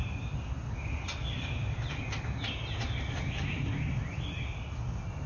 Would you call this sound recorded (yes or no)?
yes